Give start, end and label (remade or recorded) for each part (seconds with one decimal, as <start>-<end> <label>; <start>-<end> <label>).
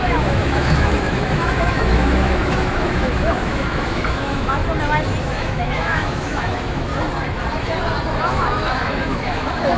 0.0-4.6 remade; 4.6-5.2 recorded; 5.2-6.9 remade; 6.9-8.2 recorded; 8.2-9.8 remade